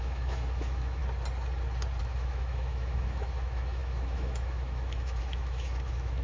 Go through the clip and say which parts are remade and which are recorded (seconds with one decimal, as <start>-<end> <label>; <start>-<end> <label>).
0.0-1.0 remade; 1.0-2.0 recorded; 2.0-6.2 remade